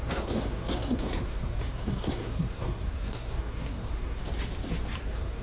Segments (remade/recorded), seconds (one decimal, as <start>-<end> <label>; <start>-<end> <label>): 0.0-4.2 remade; 4.2-5.0 recorded; 5.0-5.4 remade